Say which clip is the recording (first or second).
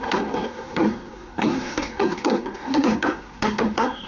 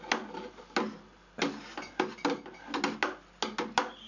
second